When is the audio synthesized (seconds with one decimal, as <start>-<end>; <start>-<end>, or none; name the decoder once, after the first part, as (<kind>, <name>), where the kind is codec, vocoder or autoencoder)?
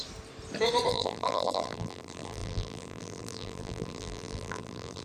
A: 0.9-5.0 (vocoder, BigVGAN v2)